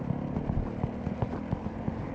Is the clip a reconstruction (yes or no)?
no